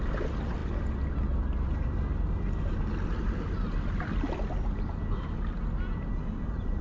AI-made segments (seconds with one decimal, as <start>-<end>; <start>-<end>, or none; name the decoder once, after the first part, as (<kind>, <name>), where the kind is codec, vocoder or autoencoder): none